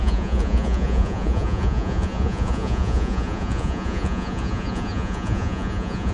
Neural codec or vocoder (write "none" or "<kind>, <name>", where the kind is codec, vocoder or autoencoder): vocoder, Vocos